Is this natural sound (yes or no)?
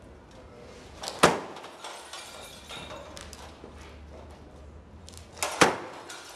yes